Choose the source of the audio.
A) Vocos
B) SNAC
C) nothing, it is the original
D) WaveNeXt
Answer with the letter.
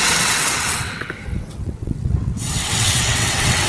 D